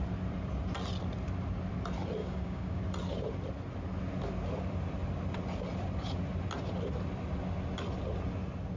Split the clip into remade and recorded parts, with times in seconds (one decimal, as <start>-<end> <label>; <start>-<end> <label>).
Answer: 0.0-2.2 recorded; 2.2-2.8 remade; 2.8-8.8 recorded